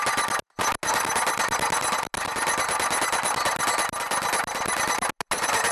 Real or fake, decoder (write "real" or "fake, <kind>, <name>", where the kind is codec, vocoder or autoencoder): real